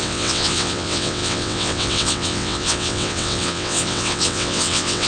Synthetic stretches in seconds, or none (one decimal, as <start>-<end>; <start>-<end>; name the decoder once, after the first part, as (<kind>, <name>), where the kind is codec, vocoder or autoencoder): 0.0-5.1 (vocoder, WaveNeXt)